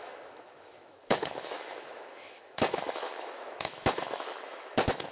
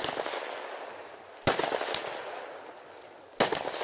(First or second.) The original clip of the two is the second